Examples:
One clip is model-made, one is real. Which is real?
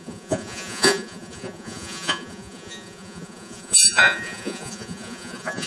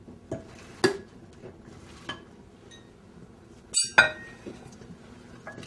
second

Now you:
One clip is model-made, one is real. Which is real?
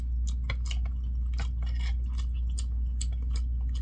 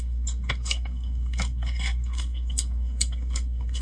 first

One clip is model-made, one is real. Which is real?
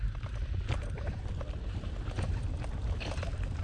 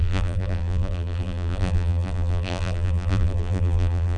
first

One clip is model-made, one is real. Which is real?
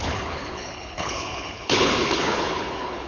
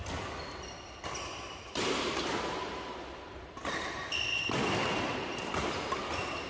second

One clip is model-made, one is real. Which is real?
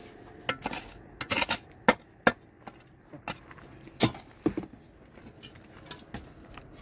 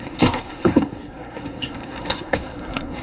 first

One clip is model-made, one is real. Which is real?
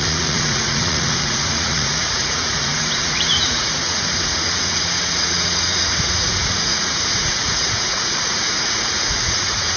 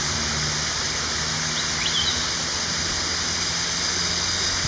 second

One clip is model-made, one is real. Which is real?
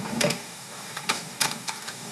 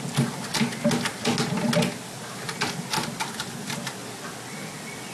second